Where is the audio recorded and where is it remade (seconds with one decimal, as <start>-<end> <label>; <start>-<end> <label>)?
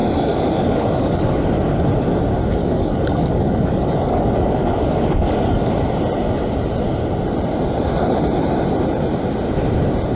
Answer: 0.0-1.4 remade; 1.4-2.6 recorded; 2.6-5.7 remade; 5.7-10.2 recorded